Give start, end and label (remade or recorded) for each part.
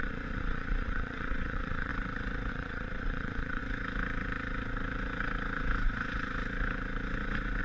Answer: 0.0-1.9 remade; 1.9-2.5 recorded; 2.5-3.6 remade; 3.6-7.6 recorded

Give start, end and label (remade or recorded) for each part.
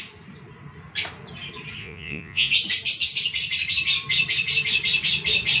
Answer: 0.0-1.8 recorded; 1.8-2.5 remade; 2.5-5.6 recorded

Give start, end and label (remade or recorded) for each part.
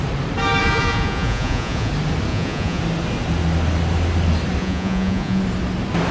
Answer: 0.0-0.6 recorded; 0.6-1.9 remade; 1.9-2.3 recorded; 2.3-2.8 remade; 2.8-4.6 recorded; 4.6-5.4 remade; 5.4-6.1 recorded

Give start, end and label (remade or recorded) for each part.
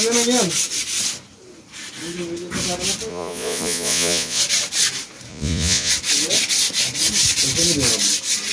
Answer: 0.0-3.1 recorded; 3.1-4.4 remade; 4.4-5.3 recorded; 5.3-5.9 remade; 5.9-8.5 recorded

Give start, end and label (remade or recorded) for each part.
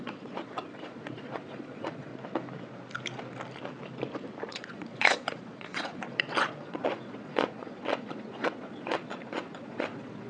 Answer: 0.0-2.1 remade; 2.1-4.5 recorded; 4.5-10.3 remade